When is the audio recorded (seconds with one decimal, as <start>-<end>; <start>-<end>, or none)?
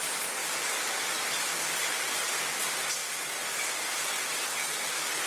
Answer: 0.0-0.4; 2.1-3.0; 3.8-5.3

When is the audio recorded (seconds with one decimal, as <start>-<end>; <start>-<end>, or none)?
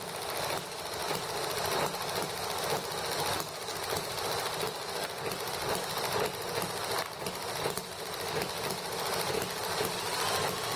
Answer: 0.0-10.8